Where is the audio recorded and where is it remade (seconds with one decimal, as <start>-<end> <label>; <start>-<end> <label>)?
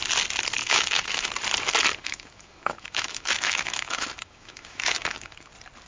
0.0-0.6 recorded; 0.6-1.3 remade; 1.3-2.0 recorded; 2.0-5.5 remade; 5.5-5.9 recorded